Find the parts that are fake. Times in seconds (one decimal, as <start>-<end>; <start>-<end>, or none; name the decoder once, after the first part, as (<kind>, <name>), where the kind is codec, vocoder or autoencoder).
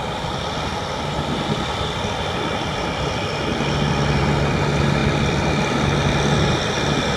none